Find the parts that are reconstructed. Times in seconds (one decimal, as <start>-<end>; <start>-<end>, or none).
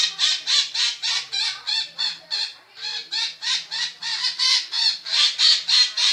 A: none